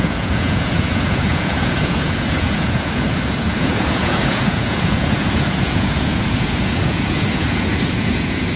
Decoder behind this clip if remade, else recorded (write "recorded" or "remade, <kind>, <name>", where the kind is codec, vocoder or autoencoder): remade, vocoder, Vocos